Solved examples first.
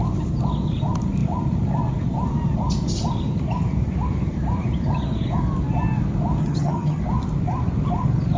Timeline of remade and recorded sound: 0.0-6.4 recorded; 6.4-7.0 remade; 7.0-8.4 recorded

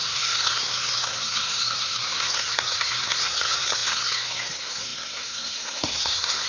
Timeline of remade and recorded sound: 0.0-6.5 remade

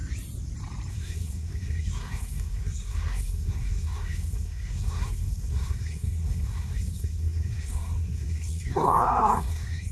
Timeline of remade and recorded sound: 0.0-0.9 recorded; 0.9-9.9 remade